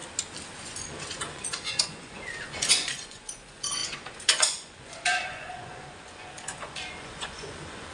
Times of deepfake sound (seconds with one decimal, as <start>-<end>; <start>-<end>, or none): 0.6-7.9